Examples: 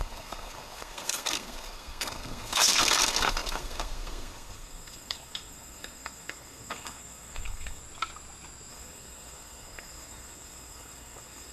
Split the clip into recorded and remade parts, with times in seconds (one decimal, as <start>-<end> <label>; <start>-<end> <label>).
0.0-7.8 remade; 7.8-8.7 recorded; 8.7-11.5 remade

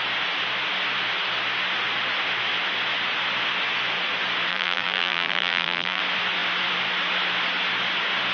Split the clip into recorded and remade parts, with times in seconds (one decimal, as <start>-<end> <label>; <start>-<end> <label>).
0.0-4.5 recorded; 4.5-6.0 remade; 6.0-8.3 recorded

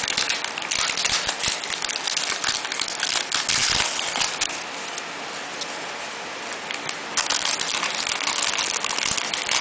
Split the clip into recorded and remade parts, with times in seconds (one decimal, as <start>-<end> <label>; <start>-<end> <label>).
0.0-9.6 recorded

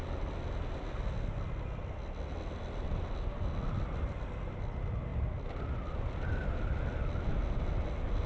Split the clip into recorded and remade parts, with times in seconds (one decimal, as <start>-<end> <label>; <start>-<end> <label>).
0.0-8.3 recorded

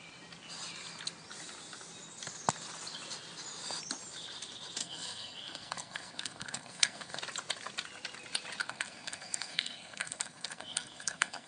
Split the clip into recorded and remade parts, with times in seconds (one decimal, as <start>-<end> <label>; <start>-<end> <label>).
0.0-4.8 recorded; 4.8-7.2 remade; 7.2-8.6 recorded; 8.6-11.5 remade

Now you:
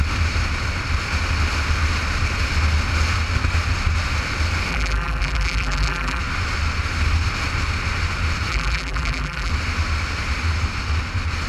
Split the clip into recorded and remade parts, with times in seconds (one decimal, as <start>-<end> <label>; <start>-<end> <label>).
0.0-4.7 recorded; 4.7-6.2 remade; 6.2-8.5 recorded; 8.5-9.5 remade; 9.5-11.5 recorded